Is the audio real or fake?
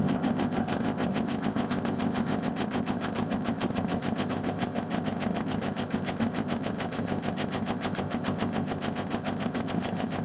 fake